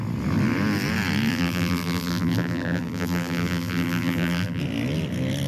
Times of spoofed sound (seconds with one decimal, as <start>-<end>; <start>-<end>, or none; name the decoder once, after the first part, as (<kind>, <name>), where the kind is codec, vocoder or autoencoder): 1.3-4.6 (vocoder, BigVGAN v2)